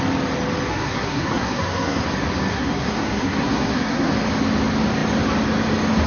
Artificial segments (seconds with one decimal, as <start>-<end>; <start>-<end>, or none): 0.7-2.0; 2.5-4.1